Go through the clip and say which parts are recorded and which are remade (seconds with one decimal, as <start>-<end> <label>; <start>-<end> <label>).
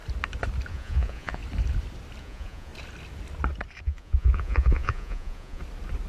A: 0.0-0.7 recorded; 0.7-1.4 remade; 1.4-2.2 recorded; 2.2-2.7 remade; 2.7-3.8 recorded; 3.8-5.6 remade; 5.6-6.1 recorded